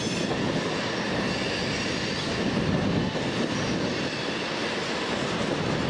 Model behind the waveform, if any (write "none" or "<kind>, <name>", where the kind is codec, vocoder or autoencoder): none